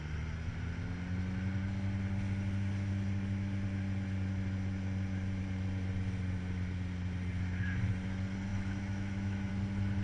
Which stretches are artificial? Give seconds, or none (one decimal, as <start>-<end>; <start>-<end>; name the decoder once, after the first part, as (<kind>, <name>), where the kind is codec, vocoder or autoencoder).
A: 8.5-9.5 (autoencoder, DAC-VAE)